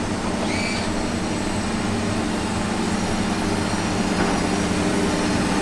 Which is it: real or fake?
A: real